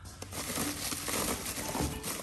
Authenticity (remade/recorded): recorded